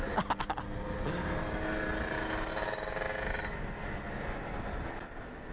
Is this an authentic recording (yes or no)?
yes